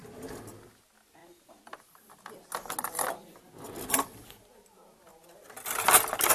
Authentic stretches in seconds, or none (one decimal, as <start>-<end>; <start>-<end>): 0.0-6.3